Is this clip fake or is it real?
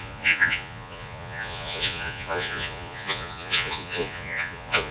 fake